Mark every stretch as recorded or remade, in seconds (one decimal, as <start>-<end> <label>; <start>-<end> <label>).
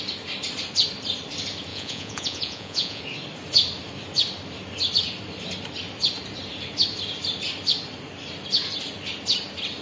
0.0-1.7 recorded; 1.7-3.0 remade; 3.0-9.8 recorded